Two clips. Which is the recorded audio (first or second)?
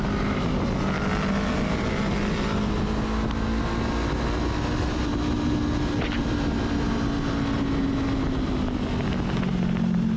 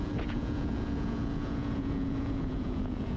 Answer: first